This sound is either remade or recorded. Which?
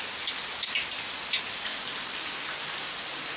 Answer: recorded